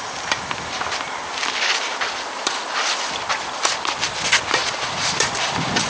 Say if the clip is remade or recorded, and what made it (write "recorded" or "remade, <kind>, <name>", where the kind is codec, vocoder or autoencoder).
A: remade, vocoder, BigVGAN v2